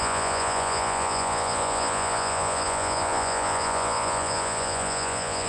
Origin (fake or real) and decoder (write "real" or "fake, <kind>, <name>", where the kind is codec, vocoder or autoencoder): fake, vocoder, Vocos